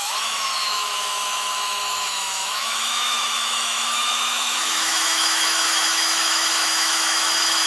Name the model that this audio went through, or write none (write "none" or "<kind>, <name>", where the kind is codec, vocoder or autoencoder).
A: autoencoder, DAC-VAE